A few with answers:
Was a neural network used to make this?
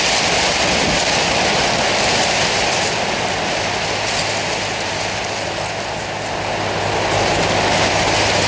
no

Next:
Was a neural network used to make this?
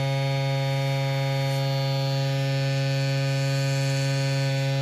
no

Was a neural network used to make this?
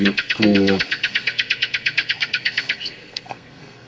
yes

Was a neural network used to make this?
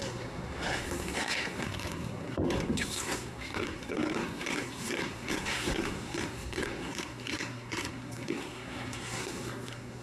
yes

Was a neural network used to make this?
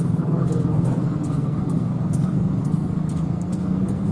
yes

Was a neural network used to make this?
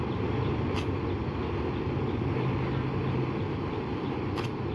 no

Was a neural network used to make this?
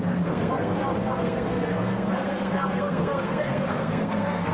yes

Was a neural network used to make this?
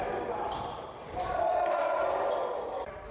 no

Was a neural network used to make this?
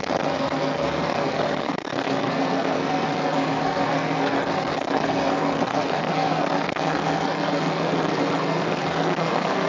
yes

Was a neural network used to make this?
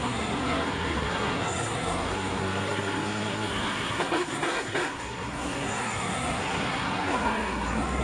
yes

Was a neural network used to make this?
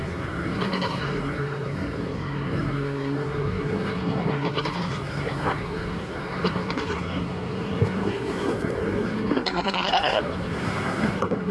yes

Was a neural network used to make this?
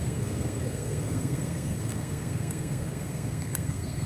yes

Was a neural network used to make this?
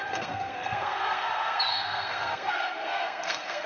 yes